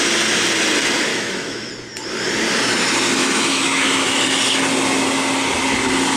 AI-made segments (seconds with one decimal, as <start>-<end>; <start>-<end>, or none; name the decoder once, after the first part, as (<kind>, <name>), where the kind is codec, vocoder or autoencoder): 1.1-1.7 (autoencoder, DAC-VAE); 3.2-4.2